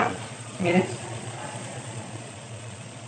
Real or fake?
fake